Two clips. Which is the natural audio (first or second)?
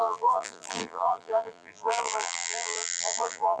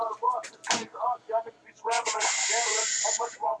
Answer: second